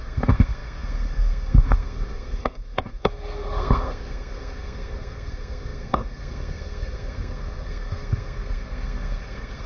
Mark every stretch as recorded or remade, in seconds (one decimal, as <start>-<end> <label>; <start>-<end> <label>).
0.0-9.7 remade